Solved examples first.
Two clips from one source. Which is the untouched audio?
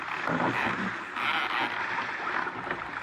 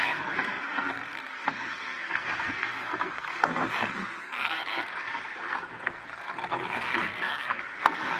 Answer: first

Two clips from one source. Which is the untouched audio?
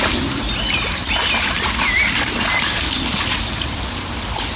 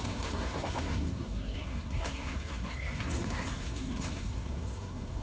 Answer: first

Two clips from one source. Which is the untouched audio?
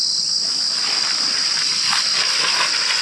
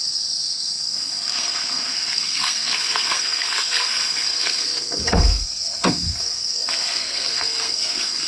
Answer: first